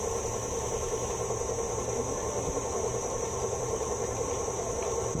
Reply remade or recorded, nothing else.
remade